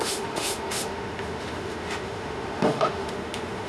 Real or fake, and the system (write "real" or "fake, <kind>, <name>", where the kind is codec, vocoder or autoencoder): fake, autoencoder, DAC-VAE